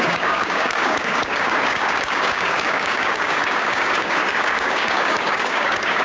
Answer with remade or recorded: remade